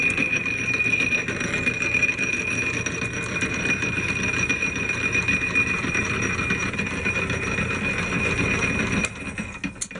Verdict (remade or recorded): recorded